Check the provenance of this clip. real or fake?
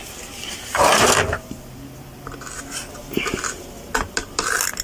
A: real